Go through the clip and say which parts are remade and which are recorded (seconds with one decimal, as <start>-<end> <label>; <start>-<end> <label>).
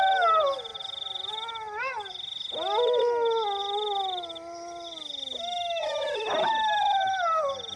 0.0-7.8 recorded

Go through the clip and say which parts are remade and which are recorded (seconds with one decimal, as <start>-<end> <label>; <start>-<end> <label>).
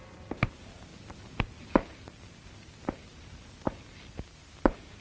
0.0-5.0 recorded